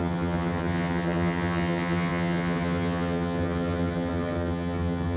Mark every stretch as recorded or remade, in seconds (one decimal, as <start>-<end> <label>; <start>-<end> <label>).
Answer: 0.0-5.2 remade

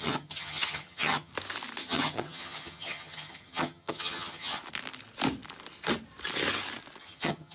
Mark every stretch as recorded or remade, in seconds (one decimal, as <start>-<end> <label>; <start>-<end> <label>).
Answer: 0.0-1.3 remade; 1.3-1.8 recorded; 1.8-4.6 remade; 4.6-7.0 recorded; 7.0-7.5 remade

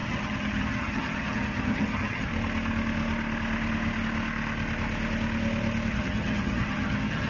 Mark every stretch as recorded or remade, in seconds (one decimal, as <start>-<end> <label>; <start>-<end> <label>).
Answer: 0.0-2.3 remade; 2.3-5.9 recorded; 5.9-7.3 remade

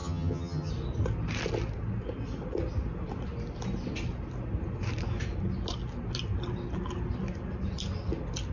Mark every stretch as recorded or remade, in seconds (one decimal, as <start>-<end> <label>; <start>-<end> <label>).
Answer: 0.0-0.7 remade; 0.7-8.5 recorded

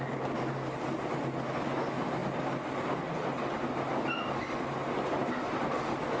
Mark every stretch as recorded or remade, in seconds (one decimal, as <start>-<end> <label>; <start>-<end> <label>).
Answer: 0.0-6.2 recorded